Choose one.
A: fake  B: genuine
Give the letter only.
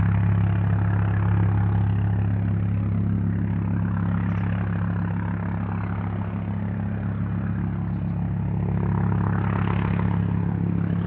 B